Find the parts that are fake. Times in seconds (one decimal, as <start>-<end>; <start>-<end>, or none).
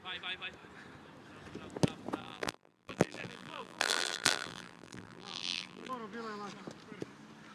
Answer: 2.2-5.9